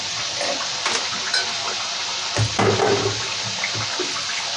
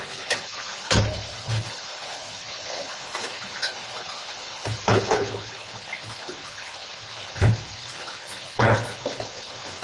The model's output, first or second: second